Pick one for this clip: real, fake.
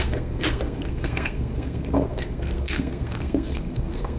fake